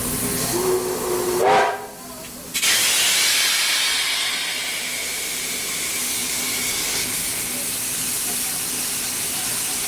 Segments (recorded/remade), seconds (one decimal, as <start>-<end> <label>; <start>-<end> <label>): 0.0-6.1 recorded; 6.1-7.4 remade; 7.4-9.9 recorded